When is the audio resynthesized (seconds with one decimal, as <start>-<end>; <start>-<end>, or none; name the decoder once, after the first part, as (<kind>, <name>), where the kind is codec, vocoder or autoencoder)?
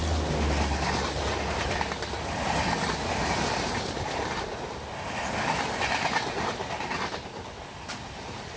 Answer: none